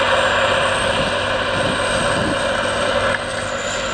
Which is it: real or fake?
real